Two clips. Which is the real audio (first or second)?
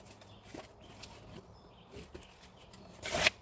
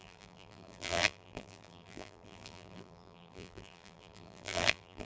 first